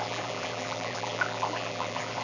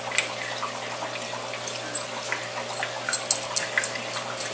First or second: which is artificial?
first